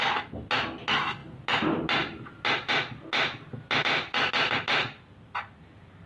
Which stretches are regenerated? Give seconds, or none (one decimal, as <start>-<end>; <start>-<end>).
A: none